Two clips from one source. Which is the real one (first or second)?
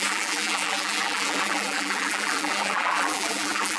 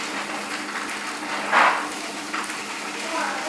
second